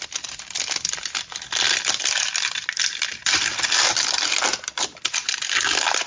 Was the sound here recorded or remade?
recorded